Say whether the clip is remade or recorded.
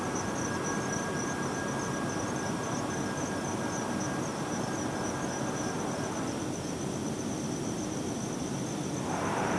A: recorded